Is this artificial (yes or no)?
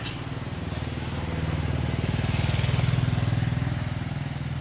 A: no